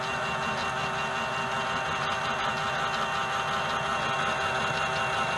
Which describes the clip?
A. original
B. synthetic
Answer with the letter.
A